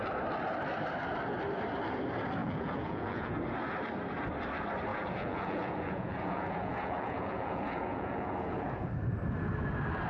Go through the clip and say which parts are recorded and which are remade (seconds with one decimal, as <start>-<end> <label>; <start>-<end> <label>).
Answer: 0.0-2.4 recorded; 2.4-3.3 remade; 3.3-4.9 recorded; 4.9-8.9 remade; 8.9-10.1 recorded